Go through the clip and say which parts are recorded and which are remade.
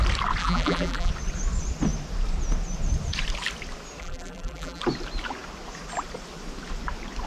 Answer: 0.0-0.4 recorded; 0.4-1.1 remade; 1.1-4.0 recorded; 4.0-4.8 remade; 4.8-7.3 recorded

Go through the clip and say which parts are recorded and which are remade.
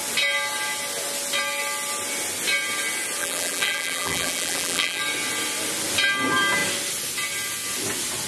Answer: 0.0-3.2 recorded; 3.2-5.0 remade; 5.0-8.3 recorded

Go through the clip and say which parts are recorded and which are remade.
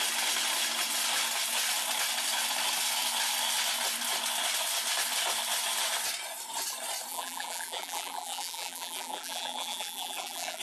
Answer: 0.0-7.1 recorded; 7.1-10.6 remade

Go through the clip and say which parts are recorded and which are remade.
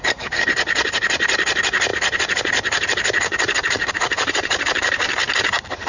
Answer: 0.0-5.2 remade; 5.2-5.9 recorded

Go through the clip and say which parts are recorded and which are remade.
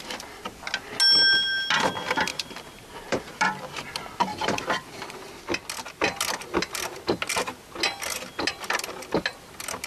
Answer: 0.0-2.3 recorded; 2.3-3.2 remade; 3.2-4.3 recorded; 4.3-5.4 remade; 5.4-9.9 recorded